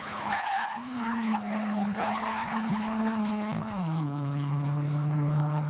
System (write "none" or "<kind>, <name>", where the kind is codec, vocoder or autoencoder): codec, HILCodec